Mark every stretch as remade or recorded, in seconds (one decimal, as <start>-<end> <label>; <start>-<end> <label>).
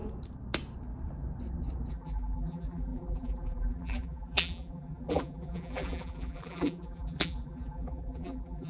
0.0-1.9 recorded; 1.9-8.7 remade